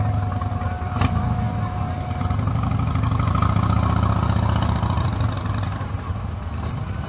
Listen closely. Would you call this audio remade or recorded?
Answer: recorded